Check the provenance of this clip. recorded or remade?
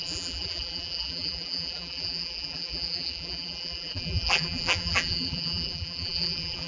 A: remade